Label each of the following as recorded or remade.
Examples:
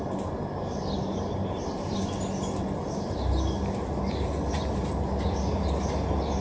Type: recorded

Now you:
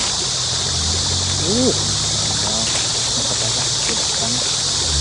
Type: recorded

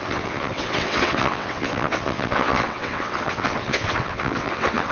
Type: remade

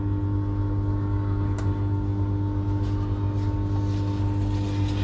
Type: recorded